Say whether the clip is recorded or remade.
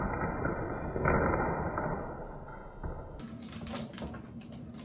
recorded